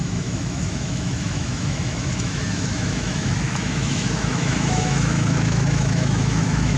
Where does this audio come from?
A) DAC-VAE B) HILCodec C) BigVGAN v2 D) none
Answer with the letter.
A